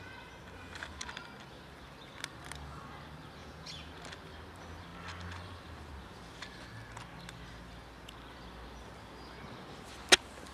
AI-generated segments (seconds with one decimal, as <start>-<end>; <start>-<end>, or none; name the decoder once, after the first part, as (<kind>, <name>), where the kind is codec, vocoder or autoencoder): 3.4-3.9 (vocoder, Vocos)